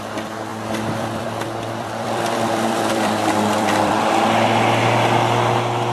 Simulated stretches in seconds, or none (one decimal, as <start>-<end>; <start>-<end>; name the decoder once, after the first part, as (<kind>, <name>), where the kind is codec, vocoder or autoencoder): 0.5-4.0 (vocoder, BigVGAN v2)